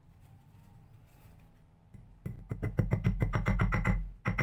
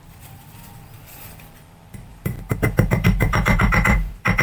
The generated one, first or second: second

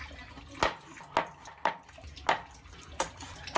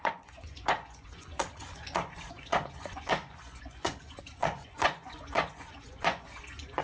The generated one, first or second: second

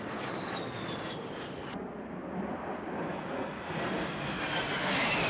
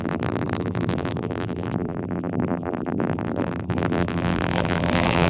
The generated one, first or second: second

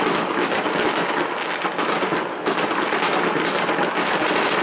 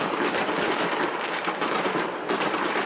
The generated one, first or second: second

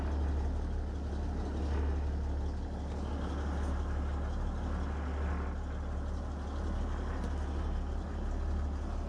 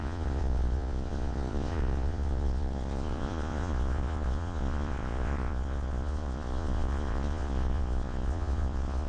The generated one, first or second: second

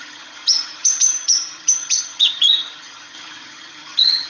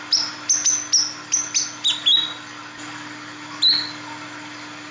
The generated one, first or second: first